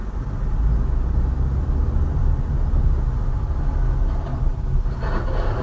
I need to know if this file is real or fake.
real